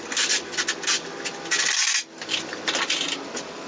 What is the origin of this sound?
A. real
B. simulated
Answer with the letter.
A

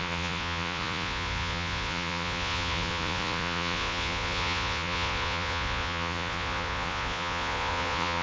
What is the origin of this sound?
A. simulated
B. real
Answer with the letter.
A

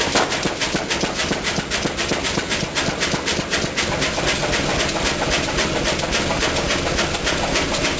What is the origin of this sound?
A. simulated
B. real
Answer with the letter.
B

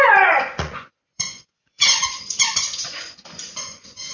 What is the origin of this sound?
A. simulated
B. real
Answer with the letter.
A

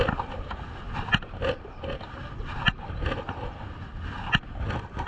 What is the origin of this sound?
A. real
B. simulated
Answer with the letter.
A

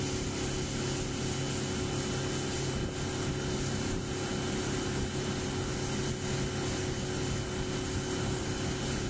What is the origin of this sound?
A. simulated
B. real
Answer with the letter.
B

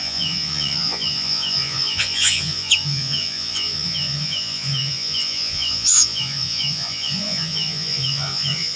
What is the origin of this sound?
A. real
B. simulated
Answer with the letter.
B